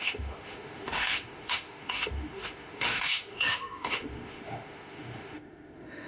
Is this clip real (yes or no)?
no